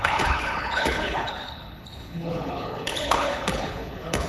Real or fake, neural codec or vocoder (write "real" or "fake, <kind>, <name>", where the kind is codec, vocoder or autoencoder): fake, codec, HILCodec